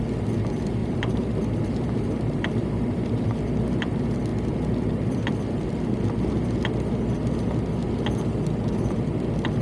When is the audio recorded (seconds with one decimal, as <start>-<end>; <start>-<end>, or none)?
0.0-0.8; 3.4-9.6